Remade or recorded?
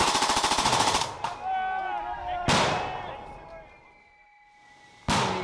recorded